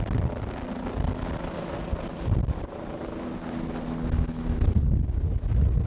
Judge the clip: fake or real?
real